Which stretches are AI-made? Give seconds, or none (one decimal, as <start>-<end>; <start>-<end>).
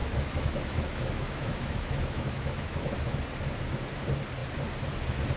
0.0-3.2